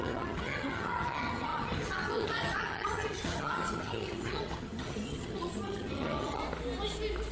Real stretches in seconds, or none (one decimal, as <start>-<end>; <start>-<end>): 6.4-7.3